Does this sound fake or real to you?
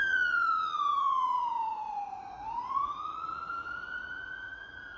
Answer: fake